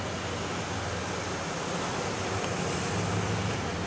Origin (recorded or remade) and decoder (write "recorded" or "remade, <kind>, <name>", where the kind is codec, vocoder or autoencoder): recorded